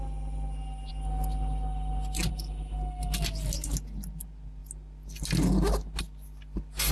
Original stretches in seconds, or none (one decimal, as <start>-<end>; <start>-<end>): 0.0-6.9